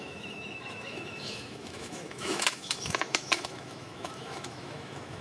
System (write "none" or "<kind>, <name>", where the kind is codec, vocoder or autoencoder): autoencoder, DAC-VAE